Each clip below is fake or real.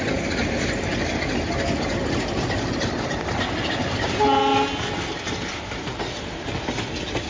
real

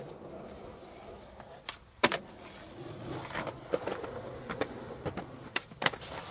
real